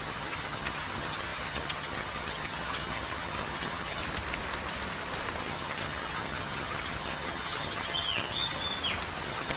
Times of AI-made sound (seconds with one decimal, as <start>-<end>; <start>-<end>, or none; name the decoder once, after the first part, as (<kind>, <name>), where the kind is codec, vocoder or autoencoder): 0.0-4.0 (vocoder, HiFi-GAN); 5.4-8.6; 9.2-9.6